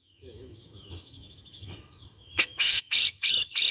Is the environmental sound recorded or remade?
remade